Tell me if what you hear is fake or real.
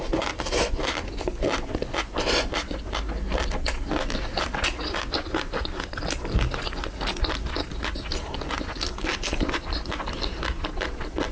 real